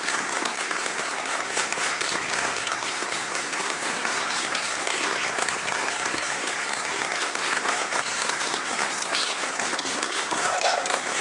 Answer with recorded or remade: remade